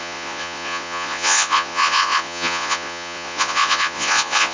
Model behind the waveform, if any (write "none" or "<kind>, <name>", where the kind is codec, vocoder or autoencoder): vocoder, Vocos